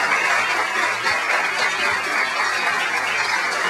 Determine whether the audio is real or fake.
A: real